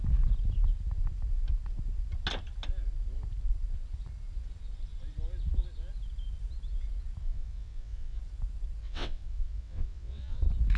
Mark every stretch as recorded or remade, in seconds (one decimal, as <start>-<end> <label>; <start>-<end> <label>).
0.0-7.2 recorded; 7.2-8.2 remade; 8.2-8.8 recorded; 8.8-10.4 remade; 10.4-10.8 recorded